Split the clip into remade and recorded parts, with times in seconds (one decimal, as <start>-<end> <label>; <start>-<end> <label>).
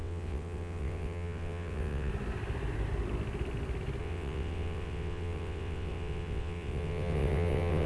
0.0-2.1 remade; 2.1-4.0 recorded; 4.0-7.9 remade